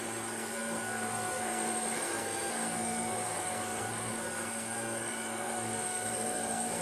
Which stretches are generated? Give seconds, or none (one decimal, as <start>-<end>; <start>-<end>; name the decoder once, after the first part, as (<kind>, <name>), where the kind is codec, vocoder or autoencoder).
0.0-6.8 (codec, SNAC)